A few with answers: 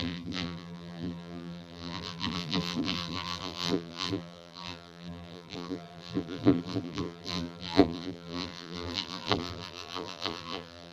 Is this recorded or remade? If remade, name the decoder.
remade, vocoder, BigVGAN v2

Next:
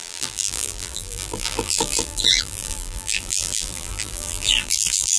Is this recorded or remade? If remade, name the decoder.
remade, vocoder, BigVGAN v2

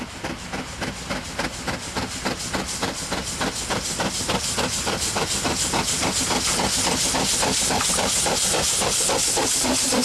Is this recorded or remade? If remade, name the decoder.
recorded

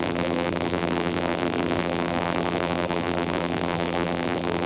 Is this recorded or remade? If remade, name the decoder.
remade, vocoder, BigVGAN v2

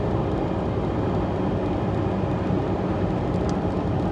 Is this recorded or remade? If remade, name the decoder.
recorded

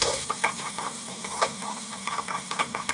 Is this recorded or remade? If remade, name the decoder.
remade, codec, SNAC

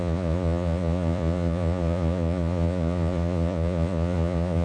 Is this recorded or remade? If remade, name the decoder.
remade, vocoder, Vocos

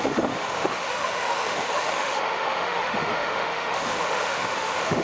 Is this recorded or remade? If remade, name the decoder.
remade, autoencoder, DAC-VAE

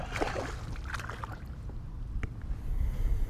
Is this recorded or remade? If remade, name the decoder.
recorded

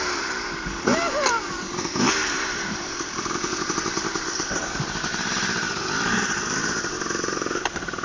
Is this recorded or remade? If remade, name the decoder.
remade, vocoder, BigVGAN v2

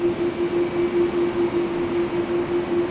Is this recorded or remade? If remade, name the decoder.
recorded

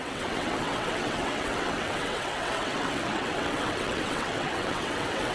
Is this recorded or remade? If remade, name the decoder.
remade, vocoder, WaveNeXt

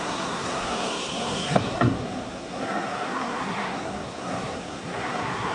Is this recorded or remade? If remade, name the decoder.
remade, codec, SNAC